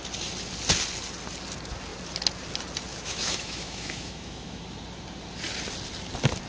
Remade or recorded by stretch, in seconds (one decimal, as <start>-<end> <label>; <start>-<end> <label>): 0.0-2.9 recorded; 2.9-4.6 remade; 4.6-6.5 recorded